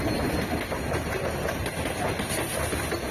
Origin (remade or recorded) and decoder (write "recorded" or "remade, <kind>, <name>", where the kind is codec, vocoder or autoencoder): recorded